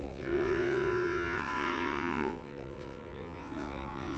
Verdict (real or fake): fake